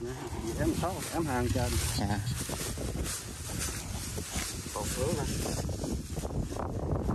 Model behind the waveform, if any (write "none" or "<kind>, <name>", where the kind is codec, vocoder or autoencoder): none